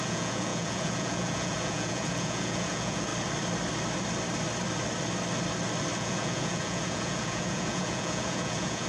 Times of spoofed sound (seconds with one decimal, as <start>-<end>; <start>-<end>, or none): 0.0-3.1; 6.0-8.9